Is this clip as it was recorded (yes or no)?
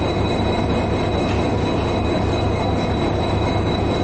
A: yes